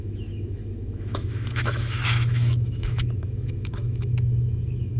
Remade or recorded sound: remade